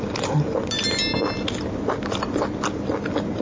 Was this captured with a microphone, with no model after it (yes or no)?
yes